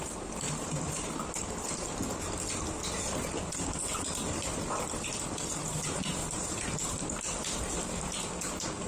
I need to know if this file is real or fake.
real